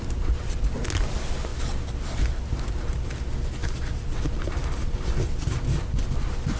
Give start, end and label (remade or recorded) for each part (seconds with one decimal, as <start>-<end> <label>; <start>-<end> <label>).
0.0-6.6 recorded